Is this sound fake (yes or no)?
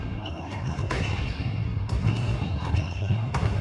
yes